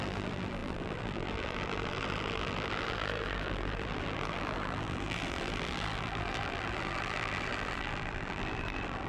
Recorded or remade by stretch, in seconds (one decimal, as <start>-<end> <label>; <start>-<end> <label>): 0.0-9.1 remade